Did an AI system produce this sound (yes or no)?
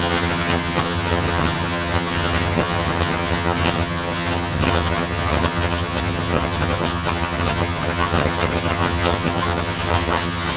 yes